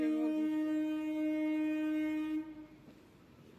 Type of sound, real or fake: real